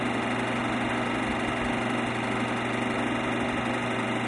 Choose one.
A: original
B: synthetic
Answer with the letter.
A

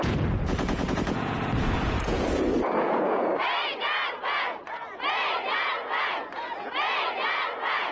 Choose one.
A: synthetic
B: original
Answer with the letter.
A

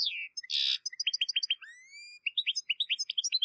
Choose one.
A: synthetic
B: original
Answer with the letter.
B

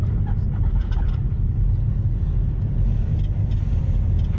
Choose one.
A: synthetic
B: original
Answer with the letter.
B